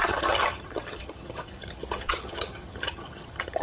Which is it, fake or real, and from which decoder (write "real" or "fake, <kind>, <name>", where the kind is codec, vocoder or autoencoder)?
fake, vocoder, HiFi-GAN